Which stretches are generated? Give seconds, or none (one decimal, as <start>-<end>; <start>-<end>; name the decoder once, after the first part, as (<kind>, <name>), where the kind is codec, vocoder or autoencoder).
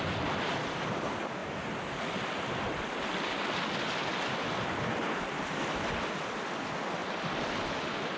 none